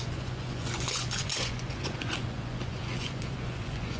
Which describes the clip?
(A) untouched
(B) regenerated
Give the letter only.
B